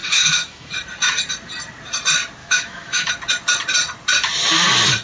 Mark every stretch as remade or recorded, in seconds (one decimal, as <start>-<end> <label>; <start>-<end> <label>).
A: 0.0-0.7 remade; 0.7-2.4 recorded; 2.4-3.1 remade; 3.1-5.0 recorded